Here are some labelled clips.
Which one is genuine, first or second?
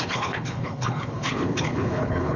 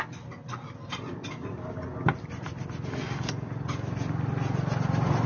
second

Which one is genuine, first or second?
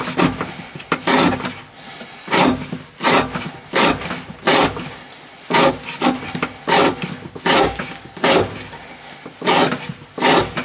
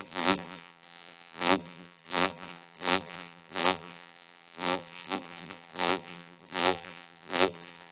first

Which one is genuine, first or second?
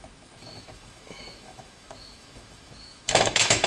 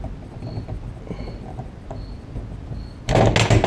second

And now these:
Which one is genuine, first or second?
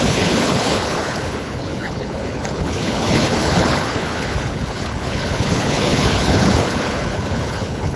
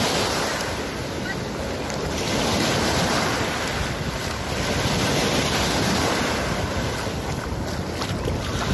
second